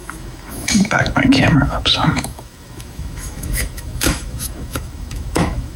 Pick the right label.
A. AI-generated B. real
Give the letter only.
A